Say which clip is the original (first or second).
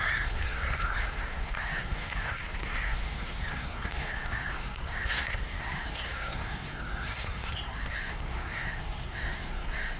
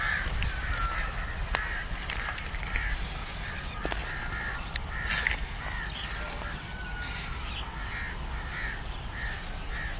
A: second